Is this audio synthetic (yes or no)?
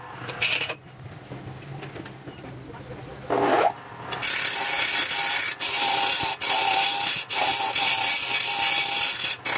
no